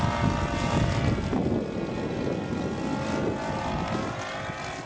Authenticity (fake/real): real